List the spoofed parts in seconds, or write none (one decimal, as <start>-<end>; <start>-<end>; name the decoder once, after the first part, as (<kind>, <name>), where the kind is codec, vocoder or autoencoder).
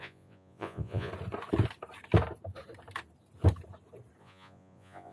0.0-1.1 (vocoder, Vocos); 4.2-5.1